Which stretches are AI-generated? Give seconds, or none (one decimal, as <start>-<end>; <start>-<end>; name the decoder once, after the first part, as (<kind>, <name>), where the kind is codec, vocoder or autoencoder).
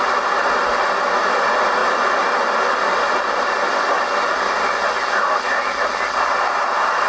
none